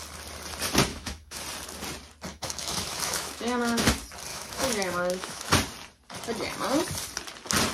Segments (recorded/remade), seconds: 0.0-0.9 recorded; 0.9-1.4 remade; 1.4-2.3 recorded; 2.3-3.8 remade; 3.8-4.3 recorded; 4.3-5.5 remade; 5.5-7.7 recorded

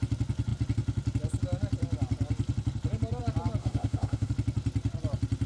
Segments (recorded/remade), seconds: 0.0-3.6 recorded; 3.6-4.3 remade; 4.3-5.5 recorded

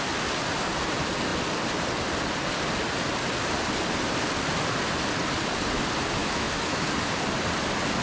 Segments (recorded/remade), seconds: 0.0-6.2 recorded; 6.2-6.9 remade; 6.9-8.0 recorded

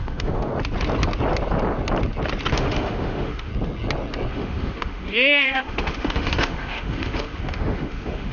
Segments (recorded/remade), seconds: 0.0-0.5 remade; 0.5-2.5 recorded; 2.5-3.5 remade; 3.5-4.3 recorded; 4.3-8.3 remade

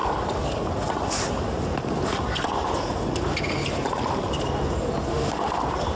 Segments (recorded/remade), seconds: 0.0-5.1 recorded; 5.1-5.6 remade; 5.6-6.0 recorded

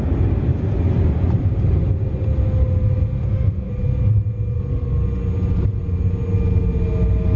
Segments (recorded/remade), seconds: 0.0-3.2 recorded; 3.2-3.7 remade; 3.7-7.4 recorded

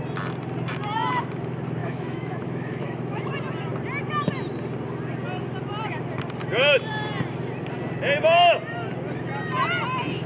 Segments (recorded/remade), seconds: 0.0-1.8 recorded; 1.8-3.3 remade; 3.3-10.3 recorded

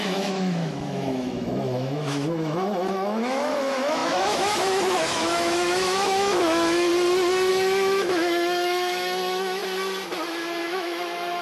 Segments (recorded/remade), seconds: 0.0-6.9 remade; 6.9-7.5 recorded; 7.5-9.6 remade; 9.6-10.6 recorded; 10.6-11.4 remade